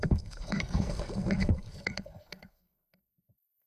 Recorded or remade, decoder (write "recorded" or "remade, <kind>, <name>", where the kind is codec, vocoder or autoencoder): remade, codec, SNAC